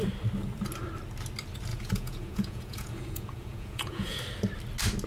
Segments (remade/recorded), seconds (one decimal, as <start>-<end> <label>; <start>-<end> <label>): 0.0-1.7 recorded; 1.7-4.2 remade; 4.2-5.1 recorded